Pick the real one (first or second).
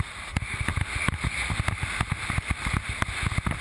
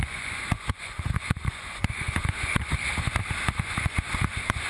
first